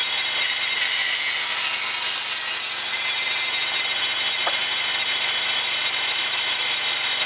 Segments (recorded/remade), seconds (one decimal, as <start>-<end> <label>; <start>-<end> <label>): 0.0-7.3 recorded